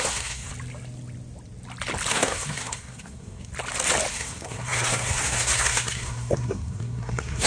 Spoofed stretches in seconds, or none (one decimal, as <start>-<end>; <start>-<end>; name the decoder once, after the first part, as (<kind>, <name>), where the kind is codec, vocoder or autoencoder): 0.0-0.5 (codec, SNAC); 2.1-3.5; 4.1-7.5